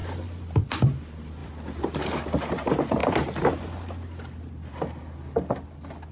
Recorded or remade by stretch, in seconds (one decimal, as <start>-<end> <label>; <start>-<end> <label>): 0.0-0.6 remade; 0.6-1.4 recorded; 1.4-2.0 remade; 2.0-6.1 recorded